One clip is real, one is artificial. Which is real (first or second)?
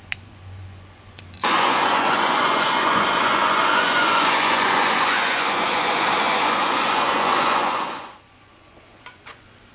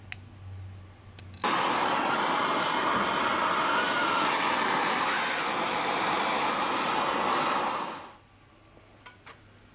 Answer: second